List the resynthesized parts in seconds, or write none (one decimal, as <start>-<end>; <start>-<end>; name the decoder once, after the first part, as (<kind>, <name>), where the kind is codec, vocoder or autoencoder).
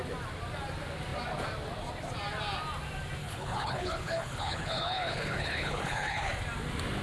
3.2-6.3 (codec, HILCodec)